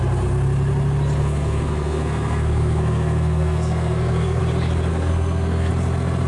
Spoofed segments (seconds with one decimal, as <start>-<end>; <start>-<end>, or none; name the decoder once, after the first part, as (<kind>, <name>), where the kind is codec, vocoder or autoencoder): 1.2-4.4 (codec, SNAC); 4.9-5.7